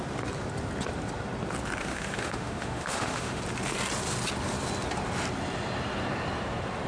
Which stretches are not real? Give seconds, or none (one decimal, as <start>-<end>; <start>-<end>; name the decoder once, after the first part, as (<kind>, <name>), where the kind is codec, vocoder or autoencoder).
1.8-3.4 (autoencoder, DAC-VAE)